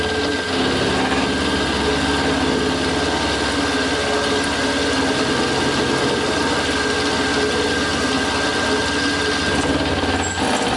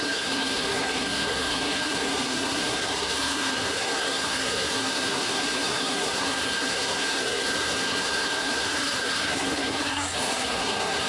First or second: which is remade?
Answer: second